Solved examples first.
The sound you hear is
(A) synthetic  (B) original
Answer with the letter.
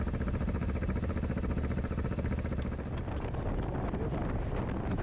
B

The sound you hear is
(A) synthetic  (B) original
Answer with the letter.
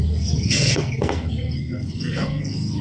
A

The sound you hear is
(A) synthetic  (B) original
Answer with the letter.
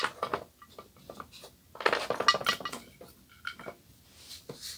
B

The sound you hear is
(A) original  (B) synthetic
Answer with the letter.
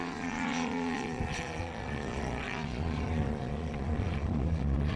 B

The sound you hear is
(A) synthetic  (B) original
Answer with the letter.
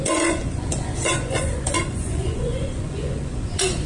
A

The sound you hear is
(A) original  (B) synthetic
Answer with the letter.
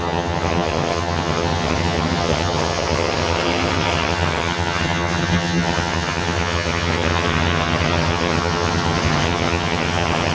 B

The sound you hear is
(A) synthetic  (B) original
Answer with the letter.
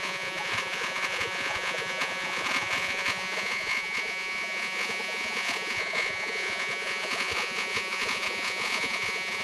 A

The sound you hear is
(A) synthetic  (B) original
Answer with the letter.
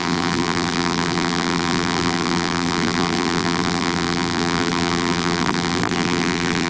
A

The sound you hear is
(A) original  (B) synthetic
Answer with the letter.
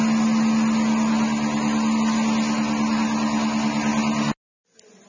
A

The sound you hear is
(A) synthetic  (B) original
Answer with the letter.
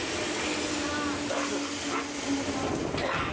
B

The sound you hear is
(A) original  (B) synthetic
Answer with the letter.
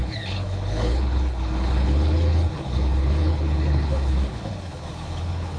B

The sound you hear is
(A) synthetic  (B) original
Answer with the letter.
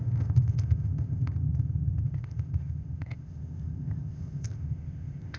A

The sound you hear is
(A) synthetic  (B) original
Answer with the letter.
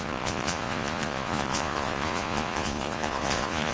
A